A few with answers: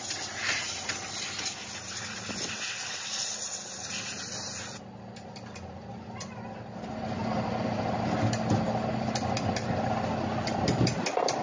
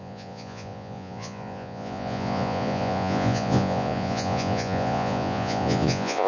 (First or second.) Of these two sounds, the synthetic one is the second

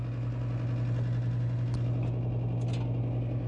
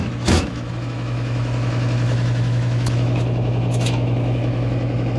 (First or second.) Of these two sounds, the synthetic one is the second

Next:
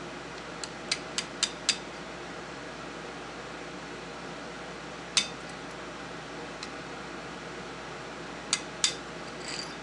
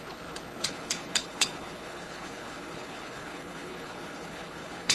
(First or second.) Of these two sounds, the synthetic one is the second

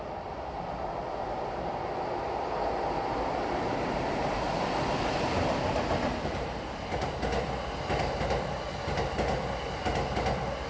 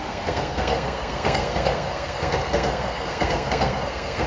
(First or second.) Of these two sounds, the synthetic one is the second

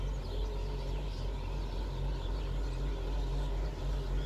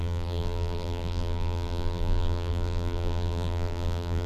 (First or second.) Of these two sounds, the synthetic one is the second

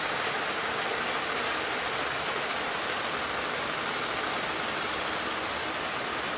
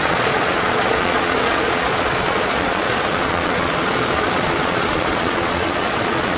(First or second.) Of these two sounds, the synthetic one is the second